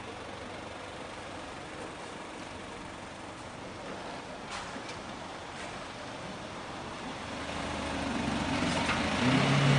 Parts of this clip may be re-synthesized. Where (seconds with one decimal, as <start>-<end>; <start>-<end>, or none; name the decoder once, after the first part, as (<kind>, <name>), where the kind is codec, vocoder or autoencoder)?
none